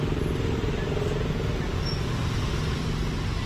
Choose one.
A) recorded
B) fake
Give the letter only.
A